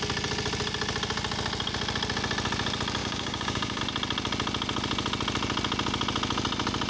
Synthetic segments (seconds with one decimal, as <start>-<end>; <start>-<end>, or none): 3.0-3.8